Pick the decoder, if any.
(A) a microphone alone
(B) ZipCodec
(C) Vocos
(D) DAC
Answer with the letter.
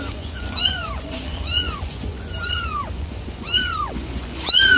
C